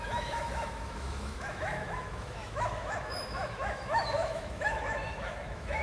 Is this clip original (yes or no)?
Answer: no